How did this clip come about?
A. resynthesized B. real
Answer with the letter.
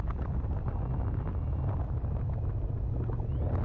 B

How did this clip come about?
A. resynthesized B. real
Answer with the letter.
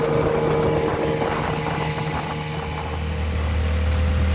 B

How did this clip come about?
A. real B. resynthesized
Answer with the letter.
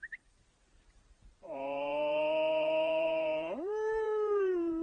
B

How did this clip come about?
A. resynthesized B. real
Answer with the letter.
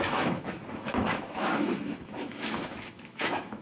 A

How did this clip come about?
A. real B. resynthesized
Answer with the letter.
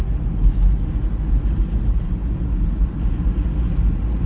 A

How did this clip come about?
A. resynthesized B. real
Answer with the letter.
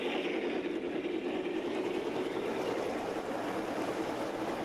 B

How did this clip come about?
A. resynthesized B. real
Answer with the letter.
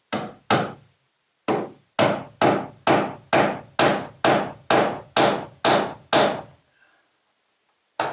B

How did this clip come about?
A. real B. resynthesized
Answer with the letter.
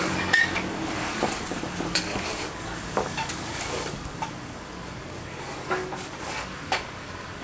B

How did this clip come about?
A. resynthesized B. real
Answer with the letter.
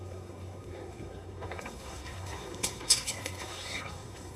A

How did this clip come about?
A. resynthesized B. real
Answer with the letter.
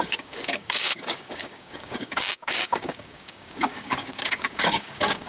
A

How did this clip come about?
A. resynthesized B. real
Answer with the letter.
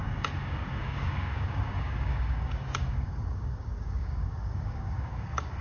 A